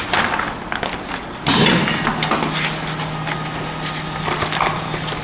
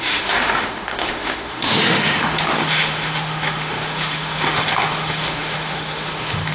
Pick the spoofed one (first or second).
second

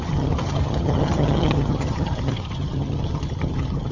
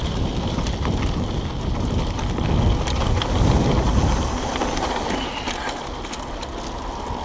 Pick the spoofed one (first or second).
first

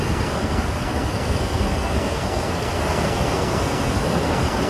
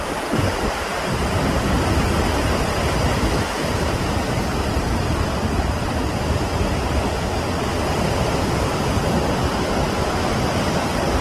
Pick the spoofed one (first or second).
first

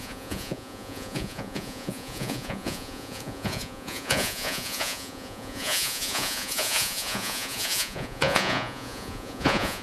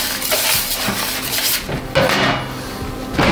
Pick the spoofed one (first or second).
first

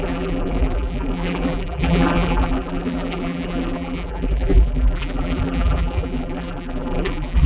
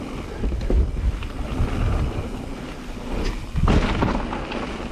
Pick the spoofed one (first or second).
first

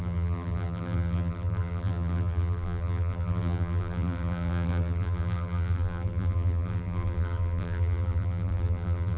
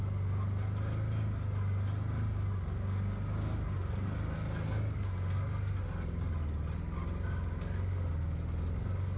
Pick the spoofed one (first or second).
first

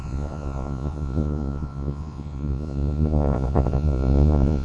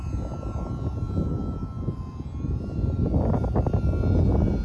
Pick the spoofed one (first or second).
first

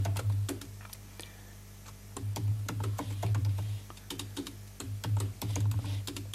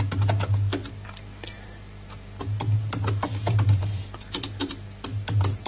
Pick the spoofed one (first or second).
second